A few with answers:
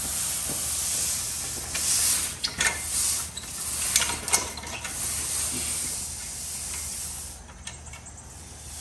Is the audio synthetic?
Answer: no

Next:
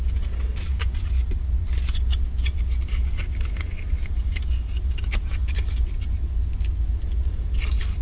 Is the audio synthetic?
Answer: no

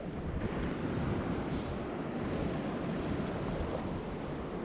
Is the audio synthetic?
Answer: no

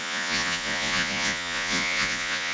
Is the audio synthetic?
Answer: yes